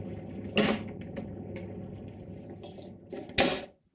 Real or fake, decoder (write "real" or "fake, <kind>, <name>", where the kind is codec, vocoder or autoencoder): real